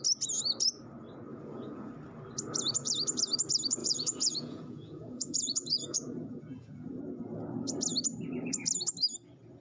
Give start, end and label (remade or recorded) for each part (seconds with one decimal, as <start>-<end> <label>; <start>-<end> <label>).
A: 0.0-1.3 recorded; 1.3-1.9 remade; 1.9-3.8 recorded; 3.8-7.0 remade; 7.0-9.6 recorded